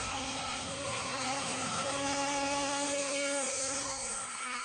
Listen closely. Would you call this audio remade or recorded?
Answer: remade